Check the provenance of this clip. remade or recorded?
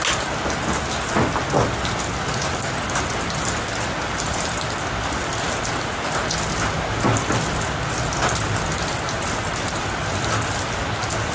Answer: recorded